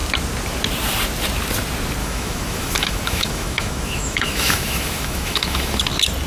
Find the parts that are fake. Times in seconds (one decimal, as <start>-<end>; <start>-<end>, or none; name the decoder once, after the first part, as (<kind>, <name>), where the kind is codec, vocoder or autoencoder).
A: 2.0-5.8 (autoencoder, DAC-VAE)